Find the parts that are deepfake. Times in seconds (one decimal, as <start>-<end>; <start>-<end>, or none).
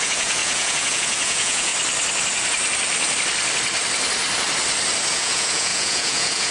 0.0-1.7; 5.1-6.5